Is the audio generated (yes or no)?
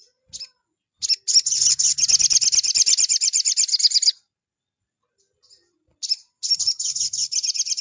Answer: no